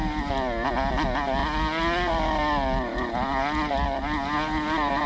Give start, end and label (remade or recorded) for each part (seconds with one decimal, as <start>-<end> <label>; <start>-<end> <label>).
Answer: 0.0-5.1 recorded